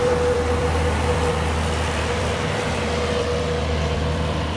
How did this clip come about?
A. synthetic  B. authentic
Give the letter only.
A